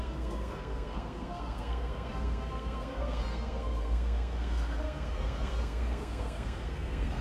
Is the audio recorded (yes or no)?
no